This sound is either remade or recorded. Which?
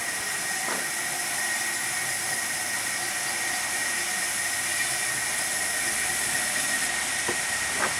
recorded